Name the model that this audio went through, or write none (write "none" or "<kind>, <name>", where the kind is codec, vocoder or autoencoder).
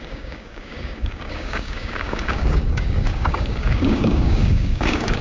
codec, DAC